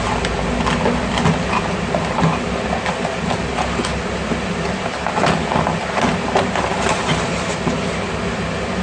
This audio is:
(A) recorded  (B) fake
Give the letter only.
A